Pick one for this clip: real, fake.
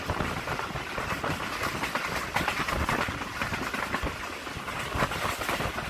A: real